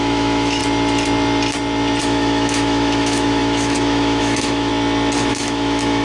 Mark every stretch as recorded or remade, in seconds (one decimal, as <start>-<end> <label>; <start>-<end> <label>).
0.0-0.6 remade; 0.6-2.0 recorded; 2.0-4.7 remade; 4.7-5.3 recorded; 5.3-6.0 remade